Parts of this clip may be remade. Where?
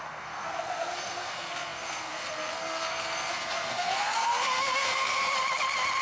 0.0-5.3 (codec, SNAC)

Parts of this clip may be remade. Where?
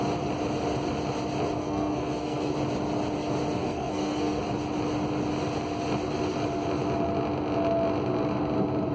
1.6-2.5 (codec, SNAC); 3.6-4.4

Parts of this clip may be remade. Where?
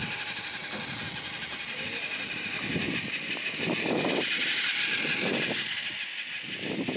none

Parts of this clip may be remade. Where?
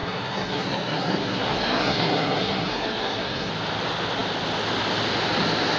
0.0-3.5 (codec, SNAC)